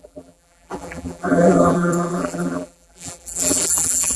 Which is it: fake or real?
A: fake